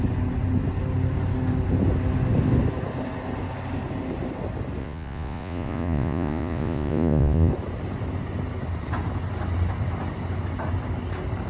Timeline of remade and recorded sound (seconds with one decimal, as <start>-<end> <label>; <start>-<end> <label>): 0.0-4.8 recorded; 4.8-7.5 remade; 7.5-11.5 recorded